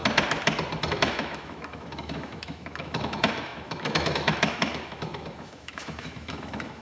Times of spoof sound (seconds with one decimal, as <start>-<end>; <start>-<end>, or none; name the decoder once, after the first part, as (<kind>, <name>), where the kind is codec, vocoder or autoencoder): 0.9-6.8 (autoencoder, DAC-VAE)